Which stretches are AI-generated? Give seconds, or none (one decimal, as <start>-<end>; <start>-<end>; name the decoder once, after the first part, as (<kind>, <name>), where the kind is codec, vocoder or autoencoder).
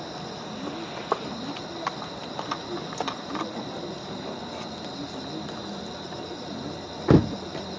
none